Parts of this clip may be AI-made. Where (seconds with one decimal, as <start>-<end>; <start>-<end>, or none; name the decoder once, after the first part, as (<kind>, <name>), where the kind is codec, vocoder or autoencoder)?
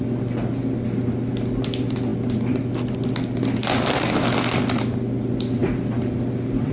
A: none